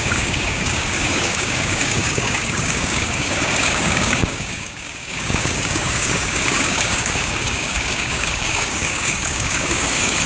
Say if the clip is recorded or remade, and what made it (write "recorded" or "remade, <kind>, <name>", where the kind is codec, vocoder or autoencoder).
remade, codec, DAC